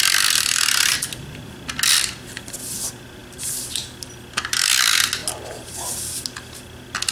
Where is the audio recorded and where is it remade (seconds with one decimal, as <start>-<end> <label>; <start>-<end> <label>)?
0.0-7.1 recorded